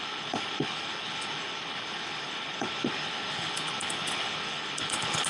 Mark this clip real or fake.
fake